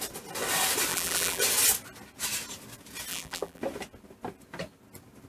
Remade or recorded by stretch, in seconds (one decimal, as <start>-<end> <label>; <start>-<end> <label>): 0.0-0.9 recorded; 0.9-1.4 remade; 1.4-3.1 recorded; 3.1-3.6 remade; 3.6-5.3 recorded